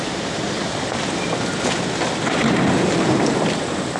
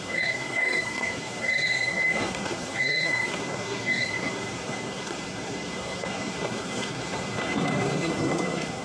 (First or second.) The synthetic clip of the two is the second